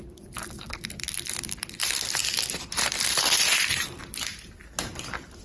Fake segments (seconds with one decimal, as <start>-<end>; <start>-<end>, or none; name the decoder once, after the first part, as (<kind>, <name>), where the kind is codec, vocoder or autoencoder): 0.0-2.2 (vocoder, BigVGAN v2); 3.1-4.3